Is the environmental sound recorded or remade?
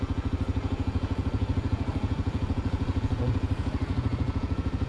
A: remade